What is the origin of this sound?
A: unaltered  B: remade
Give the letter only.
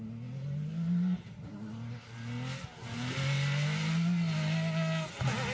A